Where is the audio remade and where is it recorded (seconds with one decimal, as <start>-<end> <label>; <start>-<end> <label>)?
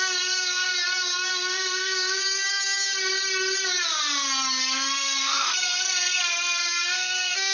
0.0-0.7 remade; 0.7-1.3 recorded; 1.3-2.2 remade; 2.2-4.6 recorded; 4.6-7.5 remade